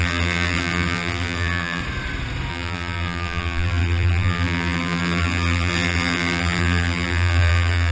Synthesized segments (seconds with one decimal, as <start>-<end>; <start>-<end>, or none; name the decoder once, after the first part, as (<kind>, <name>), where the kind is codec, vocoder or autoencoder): 0.0-1.8 (vocoder, BigVGAN v2); 2.5-7.9